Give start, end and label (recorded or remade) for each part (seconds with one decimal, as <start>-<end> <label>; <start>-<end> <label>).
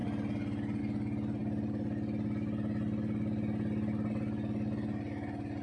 0.0-5.6 recorded